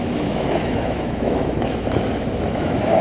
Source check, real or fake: fake